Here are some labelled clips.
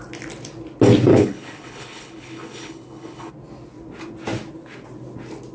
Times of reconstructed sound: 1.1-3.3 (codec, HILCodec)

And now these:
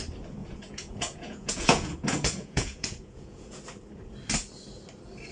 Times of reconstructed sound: 0.4-3.6 (vocoder, Vocos)